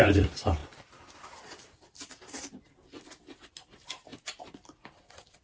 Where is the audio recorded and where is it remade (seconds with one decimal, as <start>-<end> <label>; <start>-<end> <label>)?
0.0-5.4 recorded